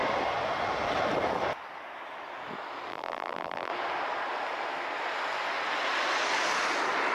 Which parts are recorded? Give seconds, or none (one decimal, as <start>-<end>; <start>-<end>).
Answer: 0.0-2.9; 3.7-7.1